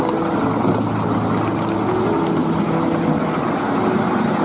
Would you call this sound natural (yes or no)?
yes